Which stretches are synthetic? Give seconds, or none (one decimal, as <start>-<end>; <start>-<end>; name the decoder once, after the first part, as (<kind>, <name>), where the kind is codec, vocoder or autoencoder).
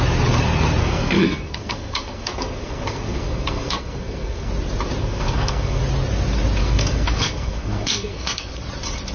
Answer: 0.8-4.5 (codec, SNAC); 5.0-5.8; 6.6-8.5